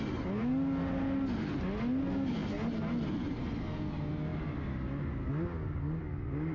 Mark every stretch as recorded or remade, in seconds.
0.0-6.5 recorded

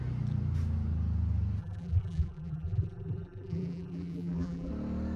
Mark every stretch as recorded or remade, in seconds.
0.0-1.6 recorded; 1.6-4.7 remade; 4.7-5.2 recorded

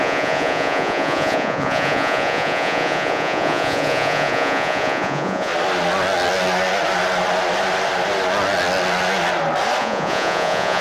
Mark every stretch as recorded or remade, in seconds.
0.0-5.5 remade; 5.5-9.8 recorded; 9.8-10.8 remade

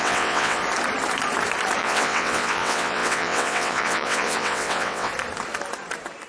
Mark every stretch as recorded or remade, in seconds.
0.0-0.6 remade; 0.6-1.8 recorded; 1.8-5.1 remade; 5.1-6.3 recorded

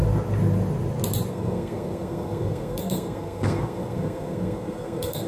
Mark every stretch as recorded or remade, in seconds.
0.0-1.3 recorded; 1.3-5.3 remade

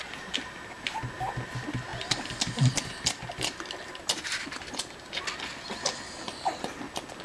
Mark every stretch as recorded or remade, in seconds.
0.0-7.2 recorded